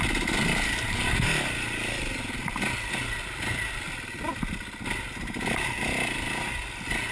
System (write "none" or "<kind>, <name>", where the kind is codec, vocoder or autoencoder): none